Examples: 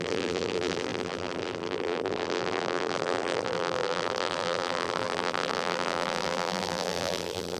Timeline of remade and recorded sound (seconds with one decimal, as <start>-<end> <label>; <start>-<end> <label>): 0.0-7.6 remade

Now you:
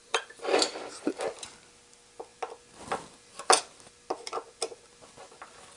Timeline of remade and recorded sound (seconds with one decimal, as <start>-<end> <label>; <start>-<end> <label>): 0.0-1.2 remade; 1.2-5.8 recorded

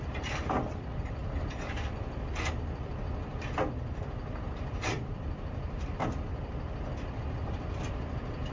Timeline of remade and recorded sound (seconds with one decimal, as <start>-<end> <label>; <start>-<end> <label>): 0.0-3.3 remade; 3.3-4.6 recorded; 4.6-6.3 remade; 6.3-7.1 recorded; 7.1-8.5 remade

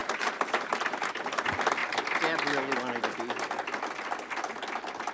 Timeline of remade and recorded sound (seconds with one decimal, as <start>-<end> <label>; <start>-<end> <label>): 0.0-0.7 remade; 0.7-5.1 recorded